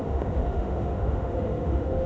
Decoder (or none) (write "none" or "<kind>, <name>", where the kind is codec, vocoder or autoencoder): autoencoder, DAC-VAE